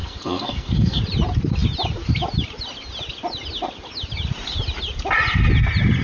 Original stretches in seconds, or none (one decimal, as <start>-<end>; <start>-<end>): 1.0-6.0